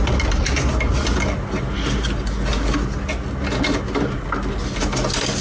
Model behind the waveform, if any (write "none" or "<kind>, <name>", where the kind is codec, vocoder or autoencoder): none